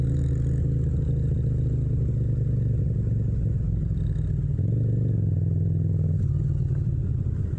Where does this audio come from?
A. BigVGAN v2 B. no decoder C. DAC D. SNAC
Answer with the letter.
B